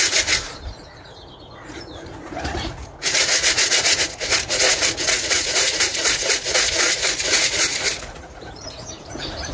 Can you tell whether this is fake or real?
fake